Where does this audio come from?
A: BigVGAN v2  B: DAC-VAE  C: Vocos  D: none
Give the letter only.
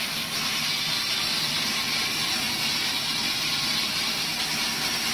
D